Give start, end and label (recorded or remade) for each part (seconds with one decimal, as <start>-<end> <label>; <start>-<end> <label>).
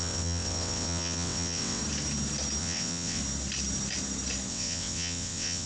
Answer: 0.0-1.8 remade; 1.8-2.6 recorded; 2.6-3.2 remade; 3.2-4.5 recorded; 4.5-5.7 remade